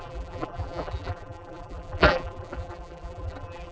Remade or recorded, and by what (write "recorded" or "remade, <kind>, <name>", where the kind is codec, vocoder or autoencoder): remade, vocoder, BigVGAN v2